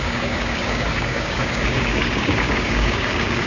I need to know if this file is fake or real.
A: fake